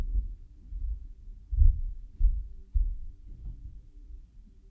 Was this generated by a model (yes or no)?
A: no